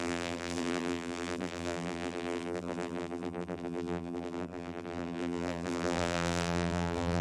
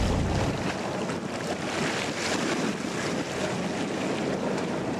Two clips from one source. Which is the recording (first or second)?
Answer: second